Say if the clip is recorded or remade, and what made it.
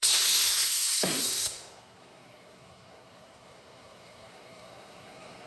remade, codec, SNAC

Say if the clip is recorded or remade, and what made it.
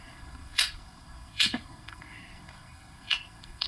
remade, codec, SNAC